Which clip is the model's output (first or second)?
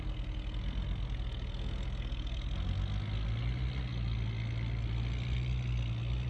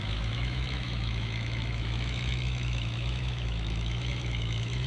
second